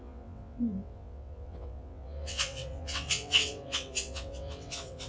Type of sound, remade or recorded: remade